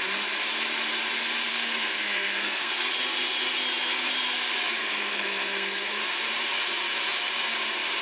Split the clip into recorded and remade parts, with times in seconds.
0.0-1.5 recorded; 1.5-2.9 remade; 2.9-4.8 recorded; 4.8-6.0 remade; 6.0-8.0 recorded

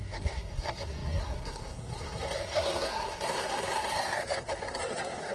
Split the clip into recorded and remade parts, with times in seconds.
0.0-5.3 remade

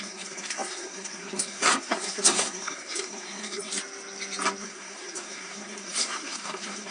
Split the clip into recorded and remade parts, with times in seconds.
0.0-3.7 remade; 3.7-4.6 recorded; 4.6-6.9 remade

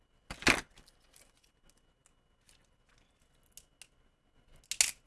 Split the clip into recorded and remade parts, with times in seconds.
0.0-5.1 recorded

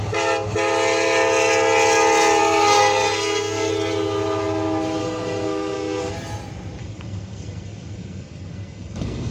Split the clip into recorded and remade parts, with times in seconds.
0.0-2.4 recorded; 2.4-3.7 remade; 3.7-5.0 recorded; 5.0-6.1 remade; 6.1-6.8 recorded; 6.8-9.3 remade

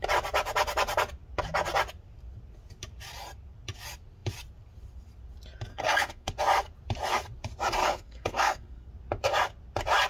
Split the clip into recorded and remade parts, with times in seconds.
0.0-5.7 recorded; 5.7-6.3 remade; 6.3-7.8 recorded; 7.8-8.9 remade; 8.9-10.1 recorded